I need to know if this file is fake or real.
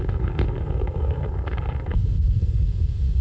fake